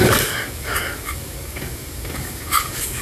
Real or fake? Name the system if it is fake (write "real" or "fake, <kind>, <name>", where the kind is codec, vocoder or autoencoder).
fake, codec, DAC